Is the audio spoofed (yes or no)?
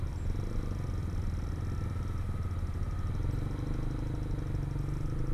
no